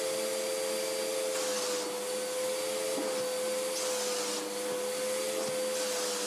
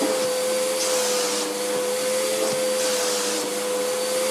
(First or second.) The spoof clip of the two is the second